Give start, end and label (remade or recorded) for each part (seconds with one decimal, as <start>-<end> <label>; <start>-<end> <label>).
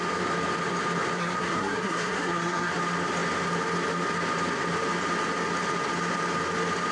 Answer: 0.0-1.2 recorded; 1.2-2.7 remade; 2.7-6.9 recorded